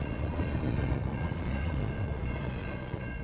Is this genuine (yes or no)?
no